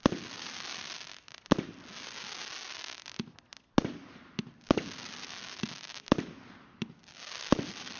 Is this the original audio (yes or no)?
yes